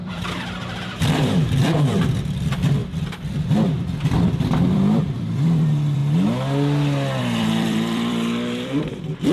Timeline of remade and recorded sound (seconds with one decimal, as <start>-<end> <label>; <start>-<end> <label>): 0.0-6.0 remade; 6.0-7.2 recorded; 7.2-9.3 remade